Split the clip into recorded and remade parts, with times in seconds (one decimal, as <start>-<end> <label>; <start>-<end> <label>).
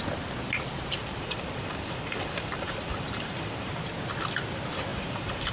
0.0-1.0 recorded; 1.0-3.7 remade; 3.7-4.9 recorded; 4.9-5.5 remade